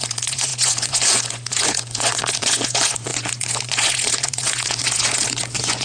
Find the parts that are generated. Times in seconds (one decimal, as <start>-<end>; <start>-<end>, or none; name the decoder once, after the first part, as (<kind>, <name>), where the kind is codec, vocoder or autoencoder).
0.0-5.8 (vocoder, Vocos)